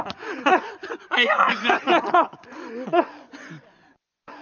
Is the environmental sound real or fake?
fake